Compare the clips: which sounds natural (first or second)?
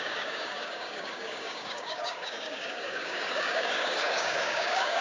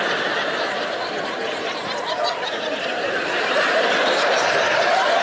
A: second